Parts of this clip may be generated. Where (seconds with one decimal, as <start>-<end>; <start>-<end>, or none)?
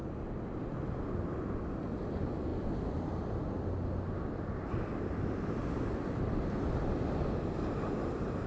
none